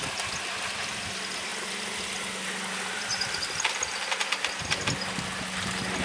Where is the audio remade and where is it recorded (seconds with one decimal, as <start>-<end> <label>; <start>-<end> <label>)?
0.0-6.0 recorded